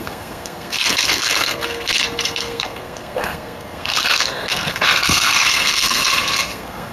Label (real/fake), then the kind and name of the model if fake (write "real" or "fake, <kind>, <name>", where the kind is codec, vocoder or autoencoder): fake, codec, SNAC